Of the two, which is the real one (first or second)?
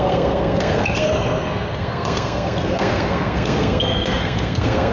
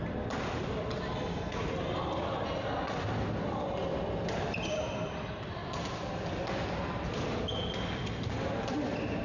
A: second